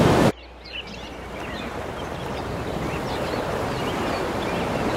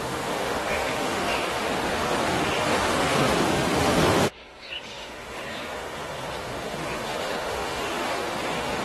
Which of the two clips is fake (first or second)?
second